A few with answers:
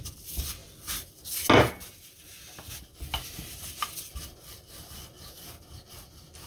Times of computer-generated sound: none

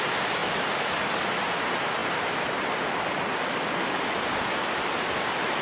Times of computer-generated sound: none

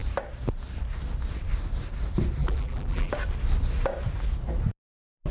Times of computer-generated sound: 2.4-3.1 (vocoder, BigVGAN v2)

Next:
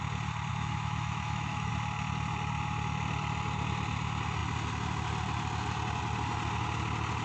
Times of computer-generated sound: 0.5-1.7 (autoencoder, DAC-VAE)

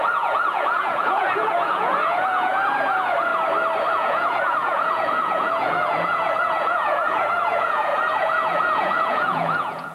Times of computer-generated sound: 0.0-3.3 (vocoder, Vocos); 3.9-9.9

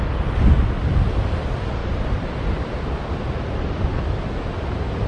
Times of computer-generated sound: 1.8-4.2 (vocoder, BigVGAN v2)

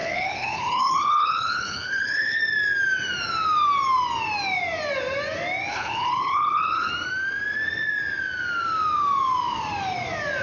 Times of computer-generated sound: 0.0-2.4 (codec, HILCodec); 5.7-6.9

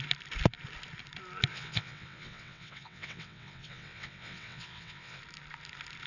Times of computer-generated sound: 1.5-5.2 (vocoder, WaveNeXt)